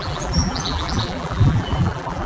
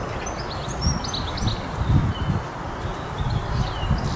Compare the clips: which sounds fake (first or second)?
first